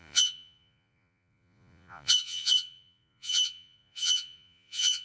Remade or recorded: remade